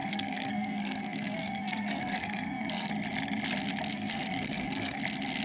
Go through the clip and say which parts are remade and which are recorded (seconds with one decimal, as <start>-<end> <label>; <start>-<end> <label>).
0.0-2.9 remade; 2.9-3.9 recorded; 3.9-5.0 remade; 5.0-5.4 recorded